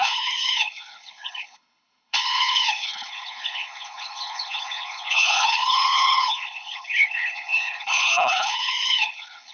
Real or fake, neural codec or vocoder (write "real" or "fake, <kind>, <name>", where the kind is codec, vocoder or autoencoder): fake, codec, HILCodec